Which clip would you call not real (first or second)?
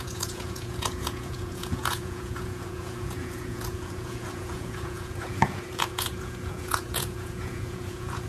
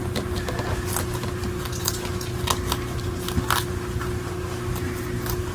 first